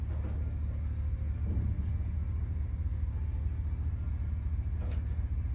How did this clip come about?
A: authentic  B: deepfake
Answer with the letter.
A